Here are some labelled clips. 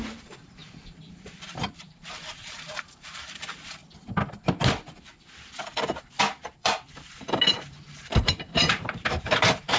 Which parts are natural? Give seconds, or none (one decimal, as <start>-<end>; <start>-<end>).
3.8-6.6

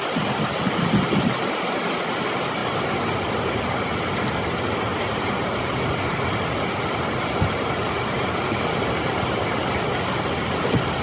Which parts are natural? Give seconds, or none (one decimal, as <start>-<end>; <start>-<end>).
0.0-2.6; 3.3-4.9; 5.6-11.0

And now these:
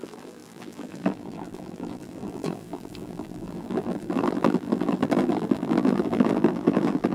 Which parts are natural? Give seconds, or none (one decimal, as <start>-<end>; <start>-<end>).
none

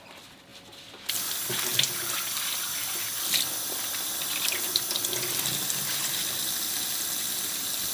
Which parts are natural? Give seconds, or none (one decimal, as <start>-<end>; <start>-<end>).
0.0-1.7; 6.4-7.9